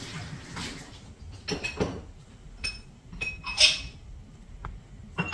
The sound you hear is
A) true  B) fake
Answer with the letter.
A